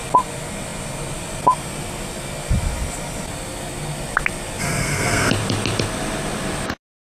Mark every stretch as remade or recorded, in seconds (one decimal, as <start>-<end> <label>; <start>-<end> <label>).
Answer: 0.0-4.6 recorded; 4.6-5.3 remade; 5.3-7.0 recorded